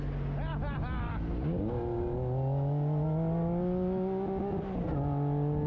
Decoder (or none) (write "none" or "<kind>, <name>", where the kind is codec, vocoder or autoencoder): none